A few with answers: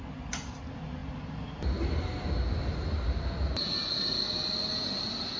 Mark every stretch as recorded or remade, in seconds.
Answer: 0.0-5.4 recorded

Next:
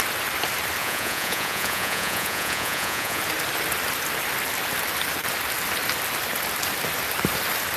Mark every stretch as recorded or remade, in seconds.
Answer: 0.0-0.8 recorded; 0.8-3.2 remade; 3.2-7.8 recorded

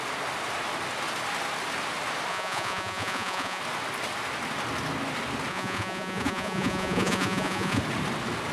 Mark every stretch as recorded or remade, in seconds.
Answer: 0.0-2.3 recorded; 2.3-3.6 remade; 3.6-5.5 recorded; 5.5-7.8 remade; 7.8-8.5 recorded

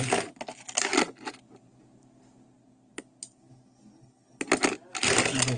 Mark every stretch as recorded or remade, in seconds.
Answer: 0.0-5.6 recorded

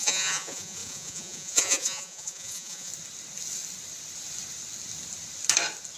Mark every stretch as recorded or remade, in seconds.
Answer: 0.0-2.9 remade; 2.9-6.0 recorded

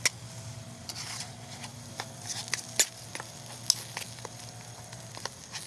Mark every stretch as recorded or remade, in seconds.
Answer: 0.0-5.7 recorded